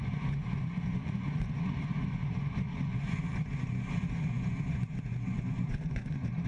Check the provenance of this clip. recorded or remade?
remade